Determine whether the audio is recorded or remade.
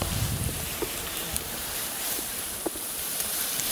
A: remade